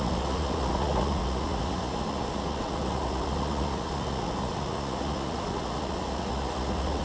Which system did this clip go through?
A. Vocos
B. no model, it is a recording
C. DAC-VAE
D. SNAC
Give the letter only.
A